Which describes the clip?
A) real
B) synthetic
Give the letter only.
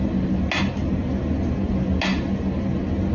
A